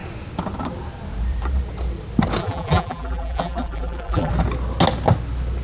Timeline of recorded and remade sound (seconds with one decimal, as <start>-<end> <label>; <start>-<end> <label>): 0.0-2.4 recorded; 2.4-4.3 remade; 4.3-5.6 recorded